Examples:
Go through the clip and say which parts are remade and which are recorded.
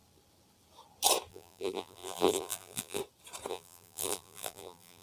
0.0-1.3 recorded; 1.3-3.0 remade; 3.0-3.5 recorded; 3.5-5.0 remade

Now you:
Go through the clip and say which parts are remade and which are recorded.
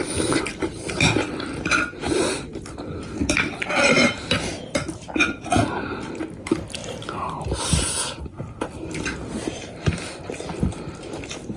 0.0-6.8 remade; 6.8-7.4 recorded; 7.4-11.6 remade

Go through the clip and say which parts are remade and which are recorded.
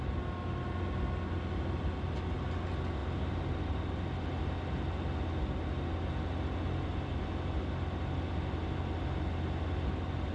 0.0-3.0 recorded; 3.0-3.8 remade; 3.8-10.3 recorded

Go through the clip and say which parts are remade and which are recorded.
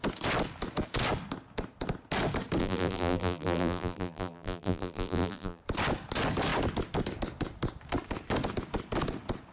0.0-2.6 recorded; 2.6-5.6 remade; 5.6-9.5 recorded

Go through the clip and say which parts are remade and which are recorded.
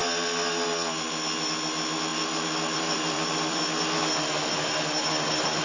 0.0-2.1 recorded; 2.1-3.7 remade; 3.7-5.6 recorded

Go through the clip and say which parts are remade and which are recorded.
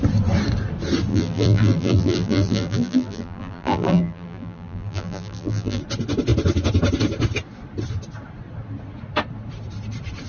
0.0-1.1 recorded; 1.1-5.8 remade; 5.8-10.3 recorded